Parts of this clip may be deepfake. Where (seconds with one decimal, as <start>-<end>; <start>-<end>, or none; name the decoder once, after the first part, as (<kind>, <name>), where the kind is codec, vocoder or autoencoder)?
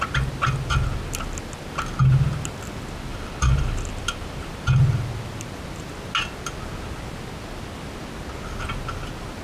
3.1-4.5 (vocoder, BigVGAN v2)